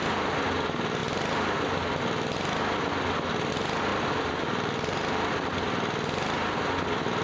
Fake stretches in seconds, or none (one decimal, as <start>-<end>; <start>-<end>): 3.9-5.7